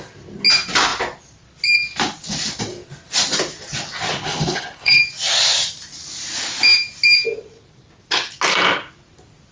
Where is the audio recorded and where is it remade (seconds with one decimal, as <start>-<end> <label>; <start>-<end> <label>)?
0.0-4.1 recorded; 4.1-5.0 remade; 5.0-9.5 recorded